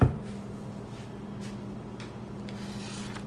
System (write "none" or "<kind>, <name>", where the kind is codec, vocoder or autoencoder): none